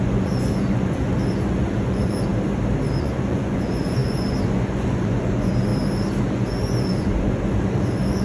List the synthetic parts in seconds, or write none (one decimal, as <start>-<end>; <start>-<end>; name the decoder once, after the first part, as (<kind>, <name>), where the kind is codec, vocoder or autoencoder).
0.0-2.3 (vocoder, Vocos); 3.0-5.7; 6.2-8.2